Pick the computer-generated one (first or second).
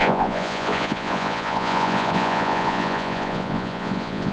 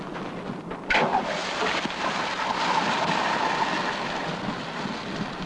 first